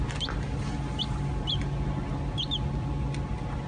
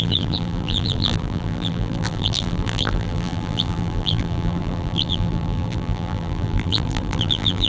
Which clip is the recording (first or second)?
first